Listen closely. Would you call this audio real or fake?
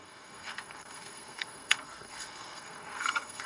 fake